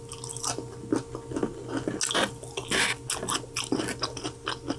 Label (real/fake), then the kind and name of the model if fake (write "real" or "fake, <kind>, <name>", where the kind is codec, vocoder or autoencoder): real